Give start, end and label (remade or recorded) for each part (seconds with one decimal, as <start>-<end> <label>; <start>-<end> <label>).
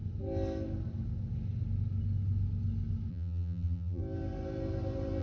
0.0-3.1 recorded; 3.1-4.0 remade; 4.0-5.2 recorded